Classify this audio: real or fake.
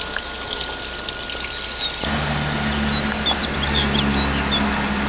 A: real